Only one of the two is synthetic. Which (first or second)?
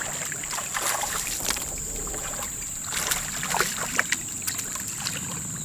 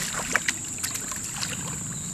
first